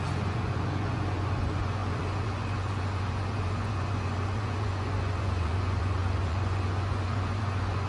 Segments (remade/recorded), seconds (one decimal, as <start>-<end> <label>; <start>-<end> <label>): 0.0-7.9 remade